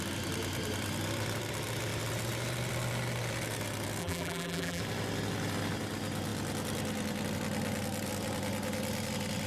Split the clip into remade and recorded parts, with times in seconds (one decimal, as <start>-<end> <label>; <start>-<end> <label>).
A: 0.0-4.0 recorded; 4.0-4.8 remade; 4.8-9.5 recorded